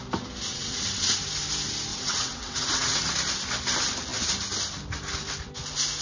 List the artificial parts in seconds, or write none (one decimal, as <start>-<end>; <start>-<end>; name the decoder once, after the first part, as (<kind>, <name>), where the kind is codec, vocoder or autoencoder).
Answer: 0.5-1.1 (vocoder, WaveNeXt); 1.9-3.1